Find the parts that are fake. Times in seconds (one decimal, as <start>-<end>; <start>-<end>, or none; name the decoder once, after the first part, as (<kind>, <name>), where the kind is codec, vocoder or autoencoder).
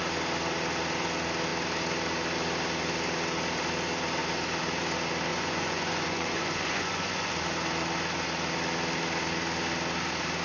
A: 5.3-7.3 (vocoder, Vocos)